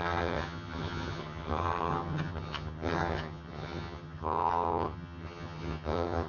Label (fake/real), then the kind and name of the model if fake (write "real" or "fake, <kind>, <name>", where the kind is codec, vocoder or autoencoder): fake, vocoder, HiFi-GAN